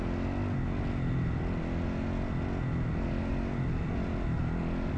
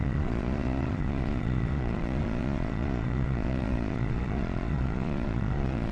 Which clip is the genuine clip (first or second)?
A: first